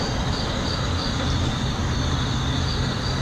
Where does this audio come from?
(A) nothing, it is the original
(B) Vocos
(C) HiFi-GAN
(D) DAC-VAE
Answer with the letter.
A